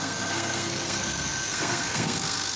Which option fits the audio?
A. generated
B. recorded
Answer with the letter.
A